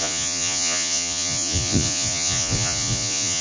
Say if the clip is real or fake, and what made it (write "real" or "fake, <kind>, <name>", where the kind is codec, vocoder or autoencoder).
fake, vocoder, Vocos